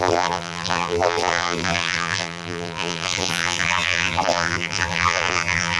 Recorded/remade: remade